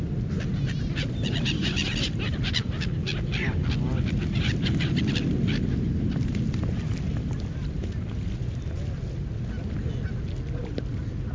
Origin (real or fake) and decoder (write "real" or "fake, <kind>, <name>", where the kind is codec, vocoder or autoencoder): real